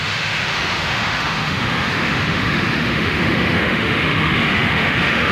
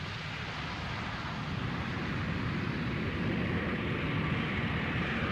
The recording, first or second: second